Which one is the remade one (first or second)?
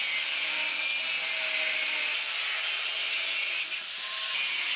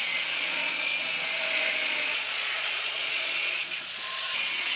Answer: second